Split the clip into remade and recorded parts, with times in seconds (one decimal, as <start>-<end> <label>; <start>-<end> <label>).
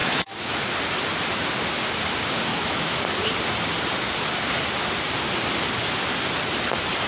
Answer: 0.0-0.6 remade; 0.6-2.5 recorded; 2.5-3.1 remade; 3.1-7.1 recorded